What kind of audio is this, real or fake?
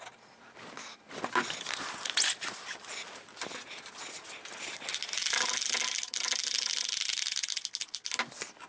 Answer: real